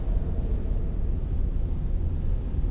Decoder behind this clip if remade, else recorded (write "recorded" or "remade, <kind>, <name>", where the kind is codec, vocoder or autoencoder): recorded